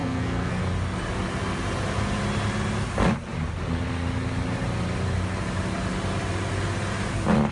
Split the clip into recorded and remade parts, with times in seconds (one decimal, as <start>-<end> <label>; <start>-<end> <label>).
0.0-0.6 remade; 0.6-7.5 recorded